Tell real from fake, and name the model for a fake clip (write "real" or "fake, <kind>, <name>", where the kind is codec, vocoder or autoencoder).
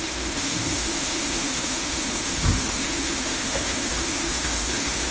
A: fake, autoencoder, DAC-VAE